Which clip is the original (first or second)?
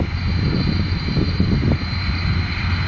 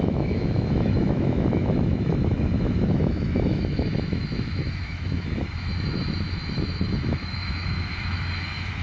first